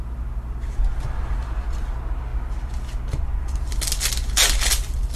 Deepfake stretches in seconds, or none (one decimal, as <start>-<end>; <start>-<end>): none

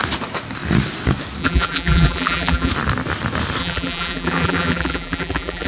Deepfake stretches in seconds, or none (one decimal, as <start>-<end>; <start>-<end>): 1.4-2.7; 3.6-5.7

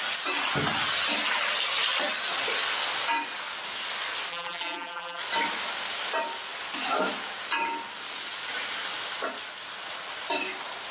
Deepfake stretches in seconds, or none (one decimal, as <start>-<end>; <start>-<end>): 4.3-5.2

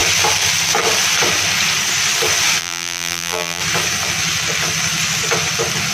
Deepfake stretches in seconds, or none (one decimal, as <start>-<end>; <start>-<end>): 2.6-3.6

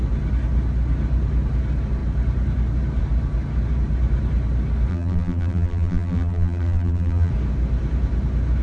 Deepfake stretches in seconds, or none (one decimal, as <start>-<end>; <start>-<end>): 4.9-7.3

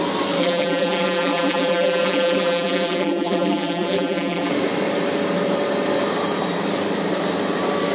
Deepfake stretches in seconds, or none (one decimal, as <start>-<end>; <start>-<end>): 0.4-4.5

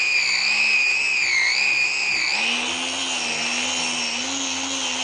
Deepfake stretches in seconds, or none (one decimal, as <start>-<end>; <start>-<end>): none

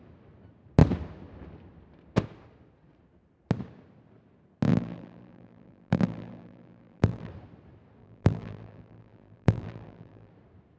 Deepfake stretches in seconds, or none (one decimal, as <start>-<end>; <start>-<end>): 4.7-7.3; 8.0-10.3